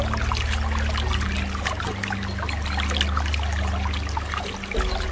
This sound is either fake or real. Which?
real